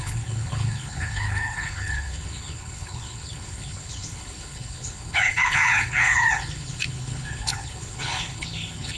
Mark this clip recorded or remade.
remade